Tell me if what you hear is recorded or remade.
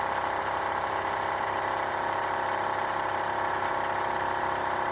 recorded